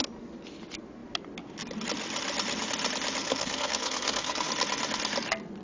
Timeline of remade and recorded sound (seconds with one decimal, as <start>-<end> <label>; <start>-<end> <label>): 0.0-3.2 recorded; 3.2-4.5 remade; 4.5-5.6 recorded